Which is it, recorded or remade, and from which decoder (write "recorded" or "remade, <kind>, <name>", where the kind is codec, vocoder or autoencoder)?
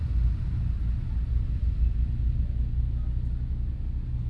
recorded